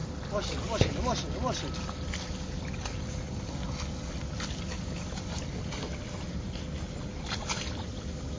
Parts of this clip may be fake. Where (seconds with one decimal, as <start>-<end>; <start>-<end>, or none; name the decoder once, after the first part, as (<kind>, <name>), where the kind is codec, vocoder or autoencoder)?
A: none